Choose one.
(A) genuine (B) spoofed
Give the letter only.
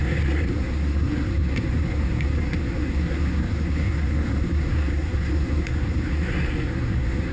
B